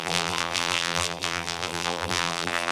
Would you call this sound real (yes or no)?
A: no